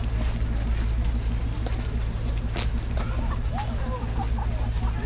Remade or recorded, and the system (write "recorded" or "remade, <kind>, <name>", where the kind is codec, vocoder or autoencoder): recorded